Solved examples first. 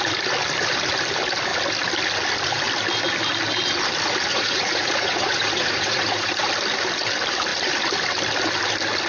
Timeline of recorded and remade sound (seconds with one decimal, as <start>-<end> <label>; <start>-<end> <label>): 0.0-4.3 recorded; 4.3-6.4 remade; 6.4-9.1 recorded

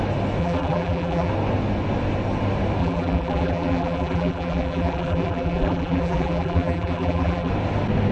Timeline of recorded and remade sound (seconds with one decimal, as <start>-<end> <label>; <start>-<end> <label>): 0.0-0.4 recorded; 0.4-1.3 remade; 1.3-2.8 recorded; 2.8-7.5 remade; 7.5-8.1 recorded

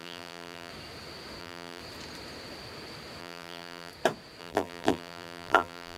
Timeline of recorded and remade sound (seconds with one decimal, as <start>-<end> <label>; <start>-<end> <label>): 0.0-0.7 remade; 0.7-1.4 recorded; 1.4-1.8 remade; 1.8-3.2 recorded; 3.2-3.9 remade; 3.9-4.4 recorded; 4.4-6.0 remade

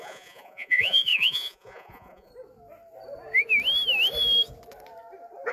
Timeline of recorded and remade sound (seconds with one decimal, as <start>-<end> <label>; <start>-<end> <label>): 0.0-2.3 remade; 2.3-5.5 recorded

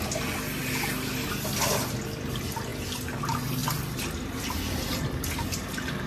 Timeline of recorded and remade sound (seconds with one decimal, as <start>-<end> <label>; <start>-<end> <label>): 0.0-6.1 recorded

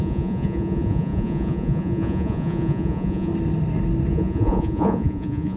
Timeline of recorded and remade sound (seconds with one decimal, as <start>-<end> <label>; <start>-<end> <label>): 0.0-3.3 remade; 3.3-4.1 recorded; 4.1-5.6 remade

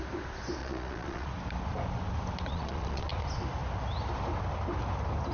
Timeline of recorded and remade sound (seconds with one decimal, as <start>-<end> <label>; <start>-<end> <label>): 0.0-0.6 recorded; 0.6-1.3 remade; 1.3-2.5 recorded; 2.5-3.1 remade; 3.1-5.3 recorded